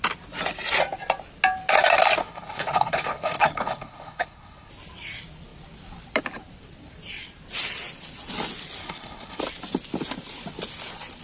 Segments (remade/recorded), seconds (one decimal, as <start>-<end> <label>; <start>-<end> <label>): 0.0-2.2 recorded; 2.2-4.7 remade; 4.7-8.8 recorded; 8.8-9.4 remade; 9.4-11.2 recorded